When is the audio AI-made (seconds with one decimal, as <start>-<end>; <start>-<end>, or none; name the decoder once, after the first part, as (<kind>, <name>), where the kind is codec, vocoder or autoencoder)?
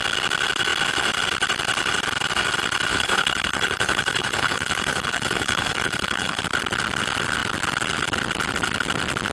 2.9-6.4 (codec, HILCodec)